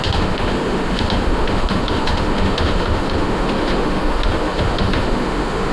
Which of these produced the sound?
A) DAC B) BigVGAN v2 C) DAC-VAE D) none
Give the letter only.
C